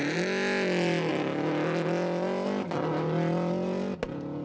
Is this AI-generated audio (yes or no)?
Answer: no